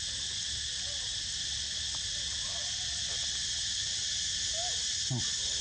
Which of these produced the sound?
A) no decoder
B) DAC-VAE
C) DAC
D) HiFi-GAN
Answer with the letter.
A